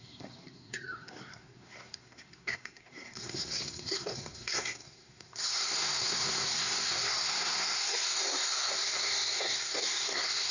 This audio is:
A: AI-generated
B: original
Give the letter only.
A